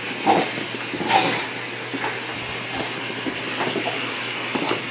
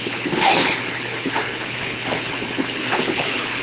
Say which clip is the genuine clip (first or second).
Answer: first